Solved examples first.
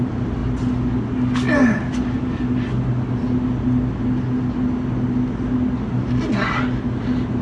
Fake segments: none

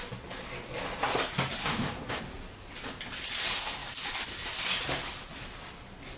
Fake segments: 1.6-2.2 (codec, SNAC)

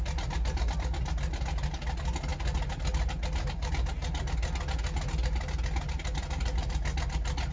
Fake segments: none

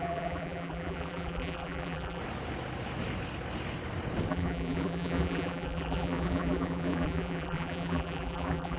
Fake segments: 0.0-2.2 (vocoder, BigVGAN v2); 4.3-8.8

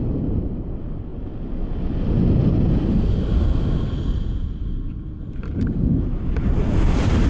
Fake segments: none

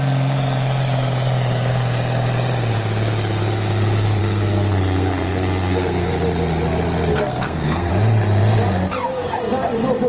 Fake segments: 4.2-6.1 (codec, SNAC); 7.1-7.9

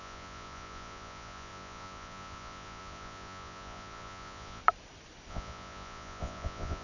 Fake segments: 0.0-4.6 (vocoder, Vocos); 5.3-6.8